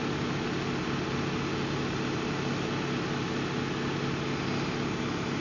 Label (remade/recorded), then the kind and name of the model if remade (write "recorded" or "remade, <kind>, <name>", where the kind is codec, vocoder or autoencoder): recorded